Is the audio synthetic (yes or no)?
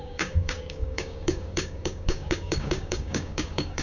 yes